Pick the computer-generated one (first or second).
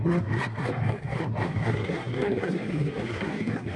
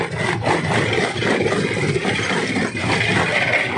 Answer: first